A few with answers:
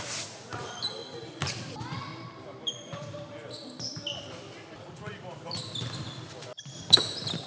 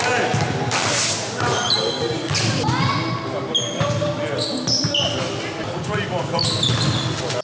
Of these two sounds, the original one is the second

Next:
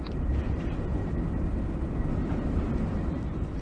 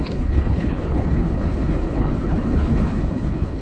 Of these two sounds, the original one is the first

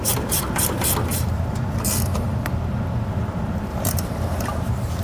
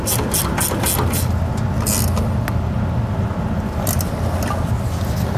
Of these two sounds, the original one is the second